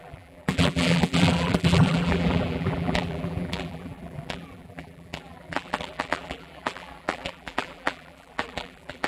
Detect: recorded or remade remade